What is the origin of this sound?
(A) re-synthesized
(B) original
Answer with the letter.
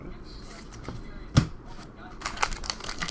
B